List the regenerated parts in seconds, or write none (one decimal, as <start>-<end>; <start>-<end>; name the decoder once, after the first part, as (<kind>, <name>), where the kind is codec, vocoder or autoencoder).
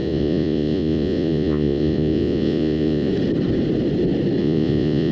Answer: 0.0-3.1 (vocoder, Vocos); 4.4-5.1